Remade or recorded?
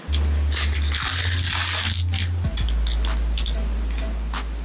recorded